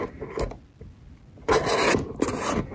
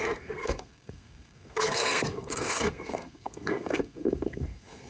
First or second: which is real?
first